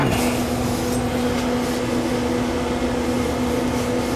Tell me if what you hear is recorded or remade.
recorded